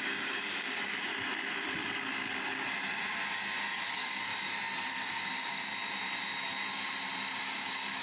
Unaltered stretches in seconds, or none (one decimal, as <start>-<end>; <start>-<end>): 1.1-3.6; 4.3-4.9; 5.7-7.4